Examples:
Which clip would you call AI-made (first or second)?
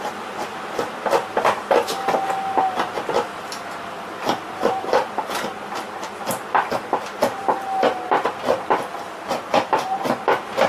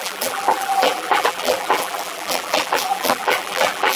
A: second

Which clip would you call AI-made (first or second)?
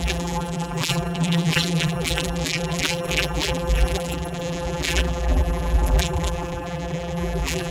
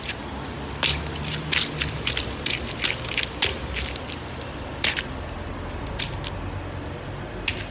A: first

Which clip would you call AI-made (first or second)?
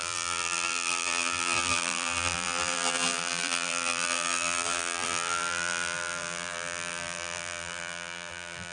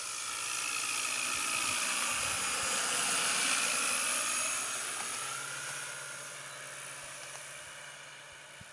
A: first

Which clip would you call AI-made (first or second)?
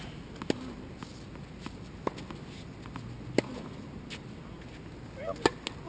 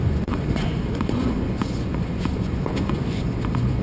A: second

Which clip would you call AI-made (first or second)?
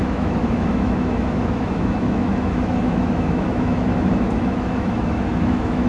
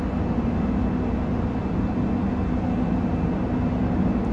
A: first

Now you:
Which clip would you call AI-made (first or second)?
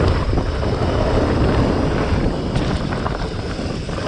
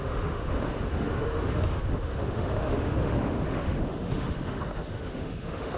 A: second